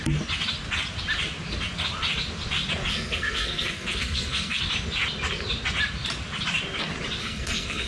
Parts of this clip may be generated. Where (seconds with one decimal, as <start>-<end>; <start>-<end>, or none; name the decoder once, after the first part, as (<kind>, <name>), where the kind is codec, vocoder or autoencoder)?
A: 2.9-4.6 (codec, SNAC); 7.2-7.9